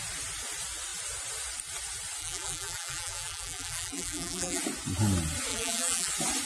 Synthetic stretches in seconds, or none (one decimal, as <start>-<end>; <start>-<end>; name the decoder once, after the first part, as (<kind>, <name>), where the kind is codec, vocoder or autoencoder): 2.2-4.6 (vocoder, BigVGAN v2); 5.5-6.1